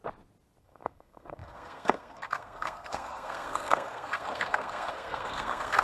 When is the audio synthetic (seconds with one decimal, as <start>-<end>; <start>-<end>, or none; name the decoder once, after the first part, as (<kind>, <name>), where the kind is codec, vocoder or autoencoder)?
0.6-5.8 (codec, SNAC)